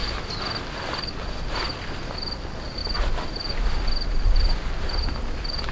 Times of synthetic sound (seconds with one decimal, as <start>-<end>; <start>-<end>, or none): none